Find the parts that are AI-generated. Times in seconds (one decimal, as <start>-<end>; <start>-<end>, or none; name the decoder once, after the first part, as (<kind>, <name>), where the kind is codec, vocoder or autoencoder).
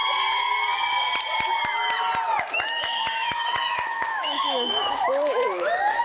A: 2.5-6.0 (autoencoder, DAC-VAE)